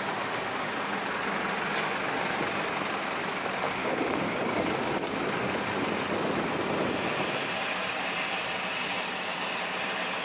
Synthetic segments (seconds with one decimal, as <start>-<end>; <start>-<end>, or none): 3.8-4.9